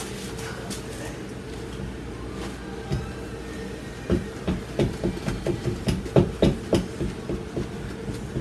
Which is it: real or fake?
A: real